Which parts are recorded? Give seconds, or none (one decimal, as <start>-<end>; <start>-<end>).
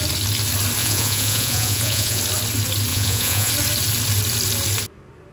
0.0-0.8; 2.2-2.9; 3.5-5.3